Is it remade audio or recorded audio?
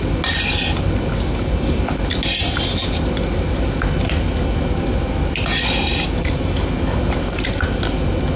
recorded